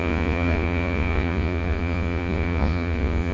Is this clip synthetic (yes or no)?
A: yes